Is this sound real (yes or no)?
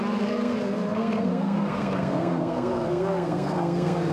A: no